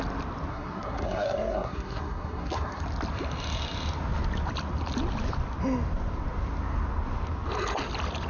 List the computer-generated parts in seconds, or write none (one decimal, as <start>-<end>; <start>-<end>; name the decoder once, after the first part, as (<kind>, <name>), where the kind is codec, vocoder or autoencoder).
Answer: 0.5-2.8 (codec, SNAC)